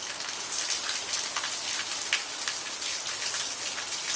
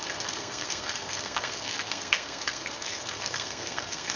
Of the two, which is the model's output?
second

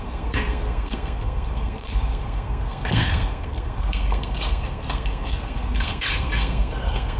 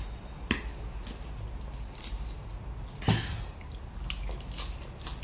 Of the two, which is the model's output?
first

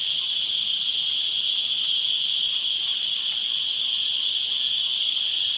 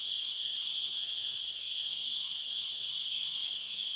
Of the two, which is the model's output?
second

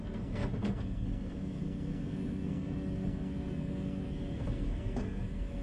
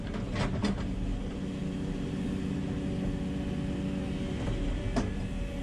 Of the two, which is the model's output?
first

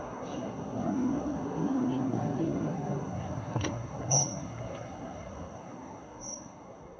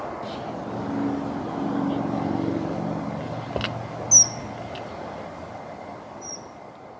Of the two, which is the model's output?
first